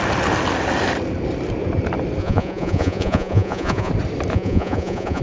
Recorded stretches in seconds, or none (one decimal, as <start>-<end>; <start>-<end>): 0.0-2.2; 3.9-4.3